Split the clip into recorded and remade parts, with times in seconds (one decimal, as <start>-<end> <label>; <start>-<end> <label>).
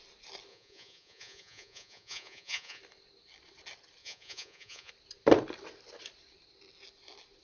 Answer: 0.0-0.5 recorded; 0.5-2.8 remade; 2.8-4.0 recorded; 4.0-4.9 remade; 4.9-7.4 recorded